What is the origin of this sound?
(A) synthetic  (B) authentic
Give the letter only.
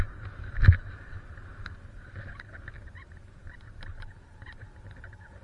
B